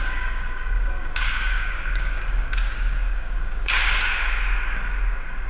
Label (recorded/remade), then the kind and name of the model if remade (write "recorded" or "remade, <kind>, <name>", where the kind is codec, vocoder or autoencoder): remade, codec, DAC